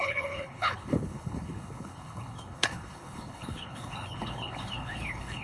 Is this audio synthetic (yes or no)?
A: yes